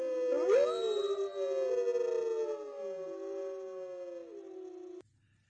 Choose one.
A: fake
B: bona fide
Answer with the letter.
B